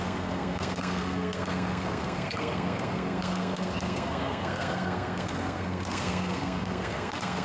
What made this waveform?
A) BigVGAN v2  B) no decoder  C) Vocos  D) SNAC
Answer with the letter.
D